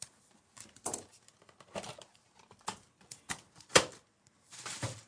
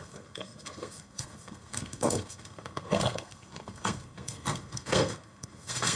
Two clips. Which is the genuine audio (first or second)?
first